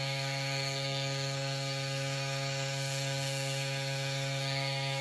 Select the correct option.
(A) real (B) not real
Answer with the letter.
B